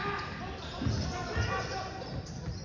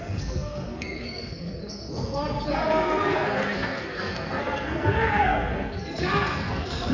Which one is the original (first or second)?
first